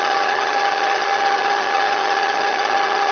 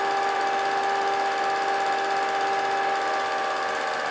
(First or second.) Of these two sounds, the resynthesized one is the first